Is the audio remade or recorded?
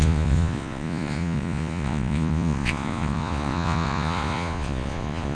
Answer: remade